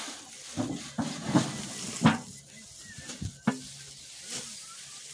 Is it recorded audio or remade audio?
recorded